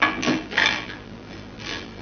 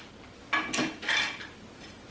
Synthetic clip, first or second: first